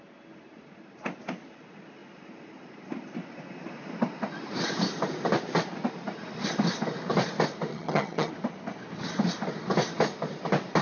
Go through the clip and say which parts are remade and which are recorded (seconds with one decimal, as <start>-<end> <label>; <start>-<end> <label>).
0.0-7.7 recorded; 7.7-8.3 remade; 8.3-10.8 recorded